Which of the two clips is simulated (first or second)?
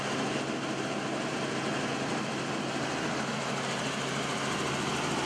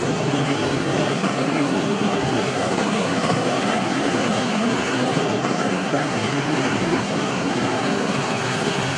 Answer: second